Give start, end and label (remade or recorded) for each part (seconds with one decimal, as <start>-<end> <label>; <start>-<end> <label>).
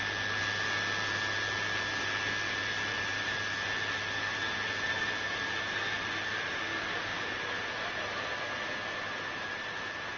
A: 0.0-10.2 recorded